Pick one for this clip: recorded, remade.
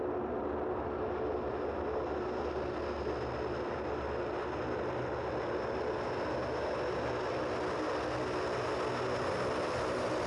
recorded